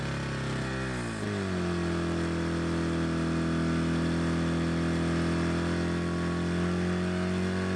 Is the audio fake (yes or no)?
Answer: no